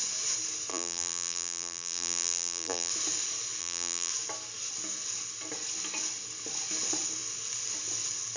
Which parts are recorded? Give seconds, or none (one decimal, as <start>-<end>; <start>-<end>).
0.0-0.7; 2.9-3.6; 4.1-8.4